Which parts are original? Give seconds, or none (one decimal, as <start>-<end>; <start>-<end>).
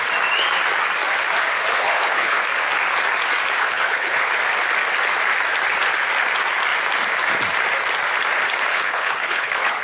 0.0-1.7; 2.4-3.6; 4.3-8.7